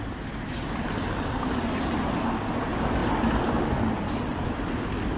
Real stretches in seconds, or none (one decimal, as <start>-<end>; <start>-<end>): 0.0-5.2